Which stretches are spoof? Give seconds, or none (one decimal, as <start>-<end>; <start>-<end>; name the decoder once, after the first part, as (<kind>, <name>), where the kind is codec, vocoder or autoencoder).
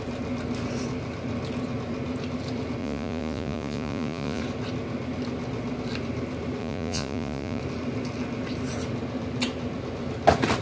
2.8-4.4 (vocoder, Vocos); 6.6-7.6